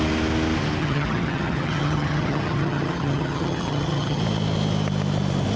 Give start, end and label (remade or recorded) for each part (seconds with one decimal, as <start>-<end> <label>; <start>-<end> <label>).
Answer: 0.0-0.8 recorded; 0.8-4.2 remade; 4.2-5.6 recorded